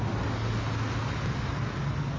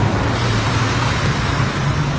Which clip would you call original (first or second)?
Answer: first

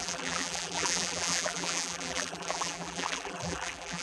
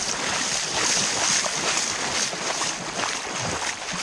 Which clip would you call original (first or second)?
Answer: second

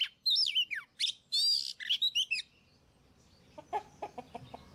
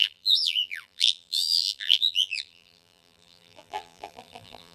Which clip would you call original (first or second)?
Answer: first